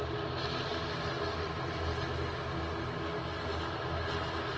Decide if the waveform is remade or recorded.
recorded